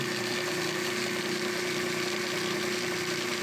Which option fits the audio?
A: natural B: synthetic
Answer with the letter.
A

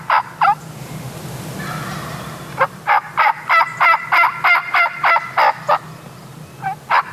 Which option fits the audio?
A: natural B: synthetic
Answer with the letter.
A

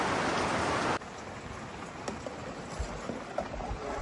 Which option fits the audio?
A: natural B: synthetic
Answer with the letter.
A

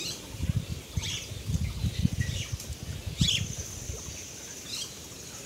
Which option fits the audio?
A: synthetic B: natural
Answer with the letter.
B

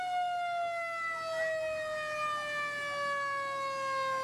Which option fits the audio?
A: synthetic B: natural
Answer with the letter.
B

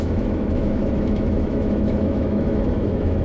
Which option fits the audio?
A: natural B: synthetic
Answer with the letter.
B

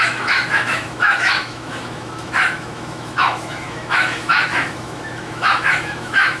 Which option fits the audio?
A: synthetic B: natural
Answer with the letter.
A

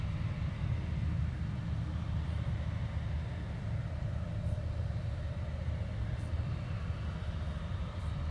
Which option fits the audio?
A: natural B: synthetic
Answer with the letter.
A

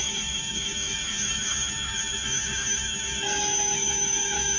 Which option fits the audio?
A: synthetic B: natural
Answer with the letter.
A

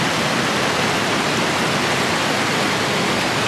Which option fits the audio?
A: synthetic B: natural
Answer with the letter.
B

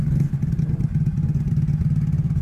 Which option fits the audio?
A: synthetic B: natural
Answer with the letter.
B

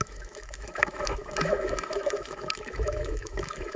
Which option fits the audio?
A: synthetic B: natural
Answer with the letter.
A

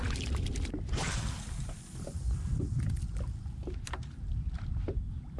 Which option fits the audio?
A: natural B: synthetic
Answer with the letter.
A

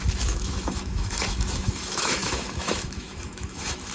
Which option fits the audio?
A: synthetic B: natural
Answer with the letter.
A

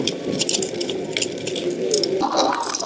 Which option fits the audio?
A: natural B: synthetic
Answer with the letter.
A